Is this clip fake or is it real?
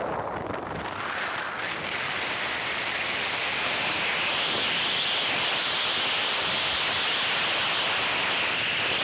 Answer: fake